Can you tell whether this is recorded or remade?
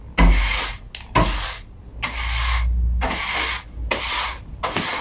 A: recorded